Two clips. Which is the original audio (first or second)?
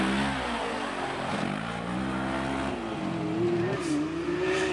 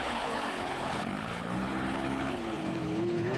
first